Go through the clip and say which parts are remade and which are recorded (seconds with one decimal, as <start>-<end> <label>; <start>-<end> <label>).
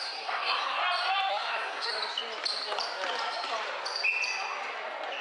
0.0-0.8 remade; 0.8-1.3 recorded; 1.3-1.9 remade; 1.9-5.2 recorded